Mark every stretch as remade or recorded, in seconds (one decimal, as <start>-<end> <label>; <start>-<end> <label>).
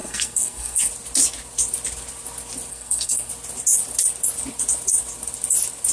0.0-0.9 remade; 0.9-2.7 recorded; 2.7-3.3 remade; 3.3-5.9 recorded